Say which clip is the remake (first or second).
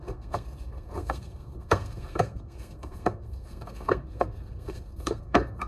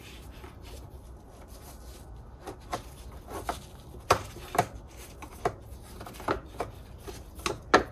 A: first